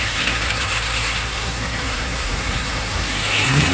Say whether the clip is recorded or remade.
remade